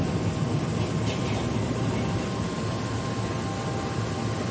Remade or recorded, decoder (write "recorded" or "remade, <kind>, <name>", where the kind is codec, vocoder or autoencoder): recorded